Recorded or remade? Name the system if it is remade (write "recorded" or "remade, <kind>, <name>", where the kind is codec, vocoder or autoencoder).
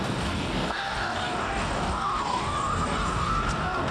remade, codec, DAC